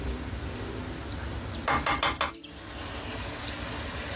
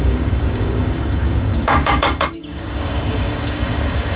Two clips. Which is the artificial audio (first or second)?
second